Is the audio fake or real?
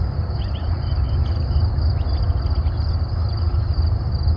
real